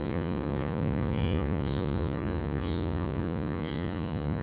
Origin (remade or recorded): remade